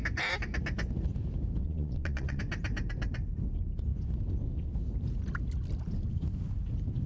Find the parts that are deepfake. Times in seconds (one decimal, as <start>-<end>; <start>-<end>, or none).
1.6-2.4